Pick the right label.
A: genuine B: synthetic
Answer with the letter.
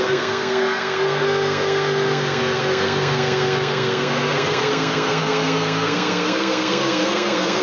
B